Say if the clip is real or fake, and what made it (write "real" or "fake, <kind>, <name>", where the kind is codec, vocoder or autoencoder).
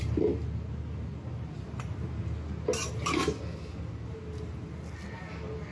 real